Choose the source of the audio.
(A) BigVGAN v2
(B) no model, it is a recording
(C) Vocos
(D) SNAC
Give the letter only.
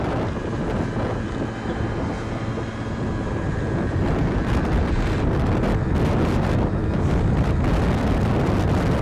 B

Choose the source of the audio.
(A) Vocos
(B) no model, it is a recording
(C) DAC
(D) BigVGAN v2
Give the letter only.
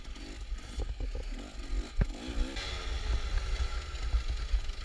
B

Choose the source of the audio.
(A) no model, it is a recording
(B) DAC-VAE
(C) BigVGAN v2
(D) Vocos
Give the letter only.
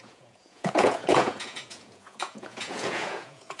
D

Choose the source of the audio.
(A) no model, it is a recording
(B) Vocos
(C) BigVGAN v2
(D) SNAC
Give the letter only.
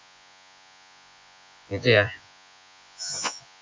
B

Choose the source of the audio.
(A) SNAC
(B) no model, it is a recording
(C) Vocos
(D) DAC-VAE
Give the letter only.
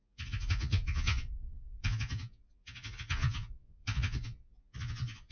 C